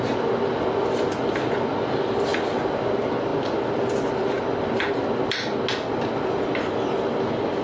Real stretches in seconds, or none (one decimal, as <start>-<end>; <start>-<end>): 0.0-7.6